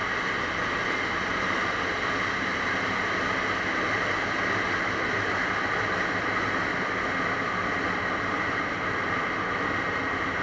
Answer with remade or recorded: recorded